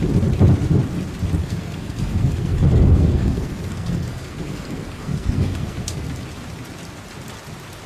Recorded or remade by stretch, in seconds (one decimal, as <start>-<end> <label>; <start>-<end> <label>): 0.0-1.4 recorded; 1.4-6.1 remade; 6.1-7.9 recorded